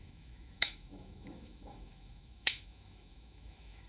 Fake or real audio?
fake